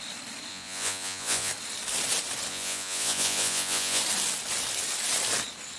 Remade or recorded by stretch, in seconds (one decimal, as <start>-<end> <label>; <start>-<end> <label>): 0.0-0.5 recorded; 0.5-1.5 remade; 1.5-2.5 recorded; 2.5-4.0 remade; 4.0-5.8 recorded